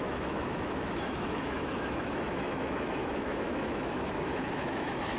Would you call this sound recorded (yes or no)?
no